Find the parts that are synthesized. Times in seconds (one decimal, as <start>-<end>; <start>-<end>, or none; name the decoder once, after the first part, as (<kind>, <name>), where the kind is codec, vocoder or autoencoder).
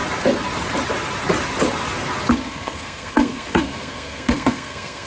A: 2.3-5.1 (codec, SNAC)